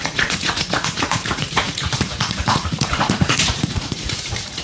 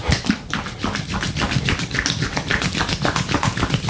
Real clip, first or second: second